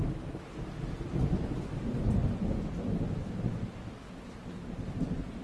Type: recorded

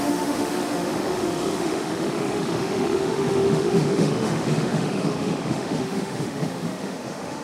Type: remade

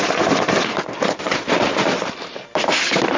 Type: remade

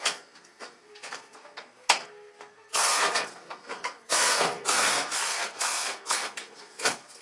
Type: remade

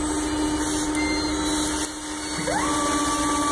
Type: recorded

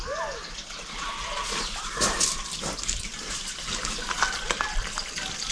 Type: recorded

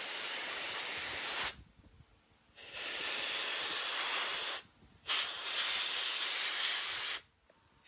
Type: recorded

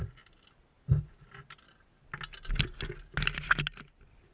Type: recorded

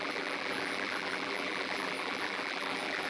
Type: remade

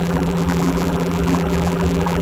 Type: remade